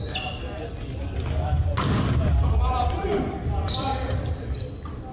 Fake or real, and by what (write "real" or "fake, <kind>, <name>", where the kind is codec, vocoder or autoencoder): real